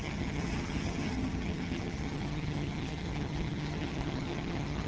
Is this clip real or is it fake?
fake